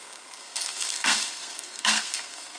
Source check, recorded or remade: remade